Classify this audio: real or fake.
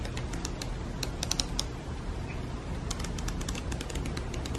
real